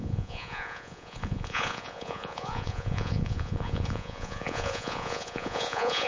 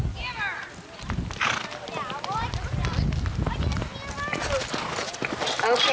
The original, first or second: second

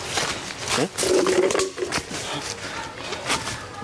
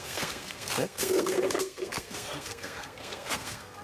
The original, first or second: first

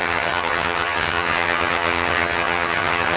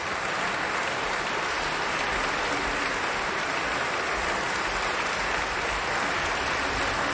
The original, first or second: second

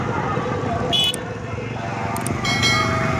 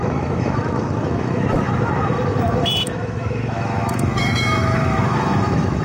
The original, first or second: first